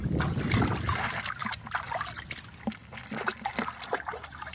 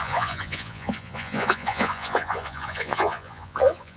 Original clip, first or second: first